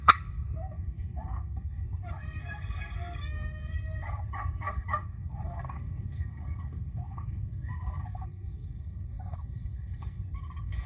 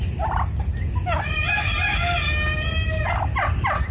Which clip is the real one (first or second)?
second